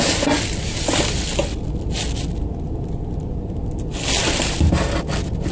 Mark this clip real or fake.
real